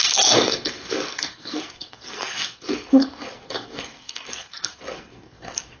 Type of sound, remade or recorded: remade